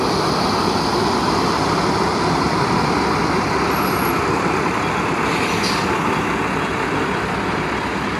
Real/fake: real